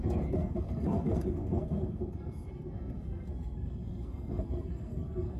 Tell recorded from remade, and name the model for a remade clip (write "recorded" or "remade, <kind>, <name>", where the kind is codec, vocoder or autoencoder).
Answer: remade, codec, SNAC